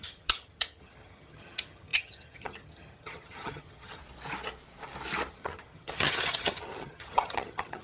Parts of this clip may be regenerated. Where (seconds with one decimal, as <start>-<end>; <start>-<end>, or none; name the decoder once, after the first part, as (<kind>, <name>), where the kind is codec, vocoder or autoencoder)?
0.0-4.0 (vocoder, HiFi-GAN); 5.3-7.8